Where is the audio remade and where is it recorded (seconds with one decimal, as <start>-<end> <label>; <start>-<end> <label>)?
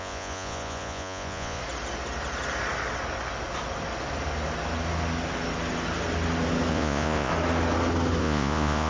0.0-1.6 remade; 1.6-6.7 recorded; 6.7-7.3 remade; 7.3-8.2 recorded; 8.2-8.9 remade